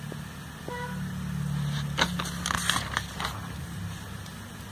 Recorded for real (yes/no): yes